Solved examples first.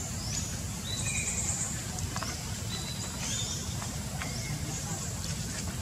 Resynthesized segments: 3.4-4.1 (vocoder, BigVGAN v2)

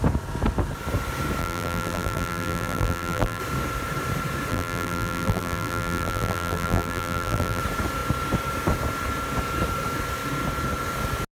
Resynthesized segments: 1.4-3.4 (vocoder, BigVGAN v2); 4.5-7.6

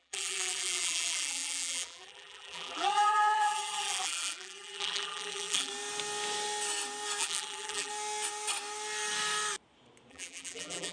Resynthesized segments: 0.0-5.7 (vocoder, BigVGAN v2); 7.2-7.9; 10.1-10.9

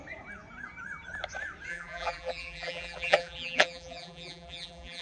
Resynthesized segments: 1.7-5.0 (vocoder, BigVGAN v2)

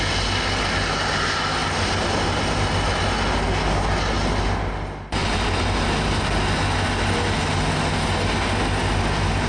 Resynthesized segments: 5.2-6.2 (vocoder, BigVGAN v2)

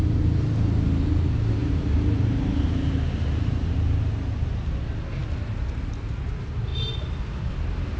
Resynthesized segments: 1.6-4.5 (vocoder, BigVGAN v2)

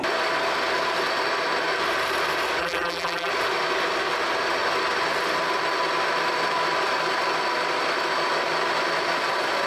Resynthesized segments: 2.6-3.3 (vocoder, BigVGAN v2)

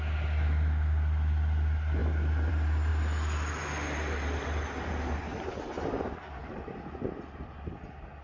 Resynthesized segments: none